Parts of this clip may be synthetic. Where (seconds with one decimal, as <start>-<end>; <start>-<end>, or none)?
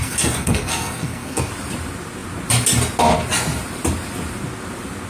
0.0-1.5